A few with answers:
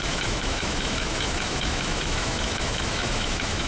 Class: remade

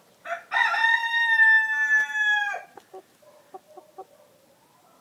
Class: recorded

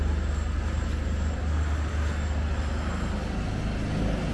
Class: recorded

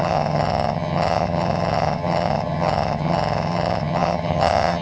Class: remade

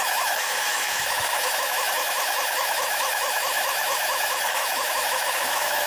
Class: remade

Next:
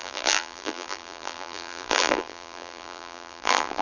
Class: remade